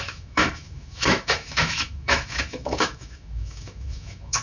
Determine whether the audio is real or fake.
fake